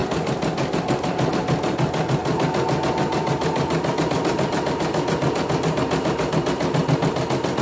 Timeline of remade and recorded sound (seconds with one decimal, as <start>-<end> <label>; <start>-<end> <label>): 0.0-7.6 recorded